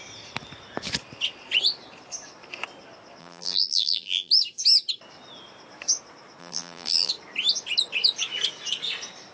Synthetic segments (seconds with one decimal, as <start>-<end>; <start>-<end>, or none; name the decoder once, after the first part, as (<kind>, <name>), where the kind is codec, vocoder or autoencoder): 3.2-4.3 (vocoder, BigVGAN v2); 6.4-7.1